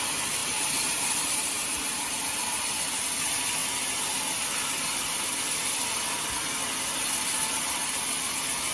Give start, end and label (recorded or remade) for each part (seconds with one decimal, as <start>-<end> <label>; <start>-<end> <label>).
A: 0.0-0.4 recorded; 0.4-3.0 remade; 3.0-8.7 recorded